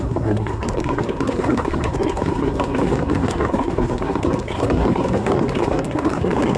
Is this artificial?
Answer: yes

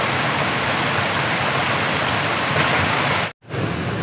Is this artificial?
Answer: no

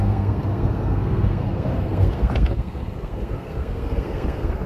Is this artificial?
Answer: yes